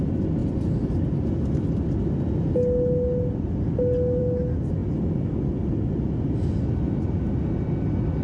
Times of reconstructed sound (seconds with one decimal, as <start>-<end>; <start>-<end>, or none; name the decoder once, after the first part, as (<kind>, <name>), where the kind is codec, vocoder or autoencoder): none